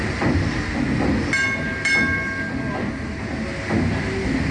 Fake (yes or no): no